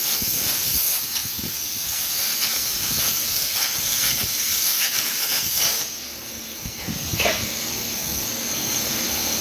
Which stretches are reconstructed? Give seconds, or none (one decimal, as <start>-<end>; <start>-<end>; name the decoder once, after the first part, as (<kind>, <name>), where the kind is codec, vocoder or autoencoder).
0.0-9.4 (codec, SNAC)